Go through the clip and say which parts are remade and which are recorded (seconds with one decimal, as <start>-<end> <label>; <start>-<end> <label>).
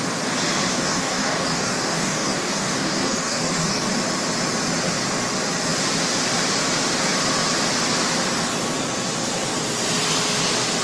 0.0-0.7 recorded; 0.7-3.9 remade; 3.9-10.8 recorded